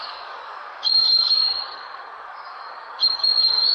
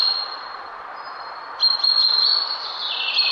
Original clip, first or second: second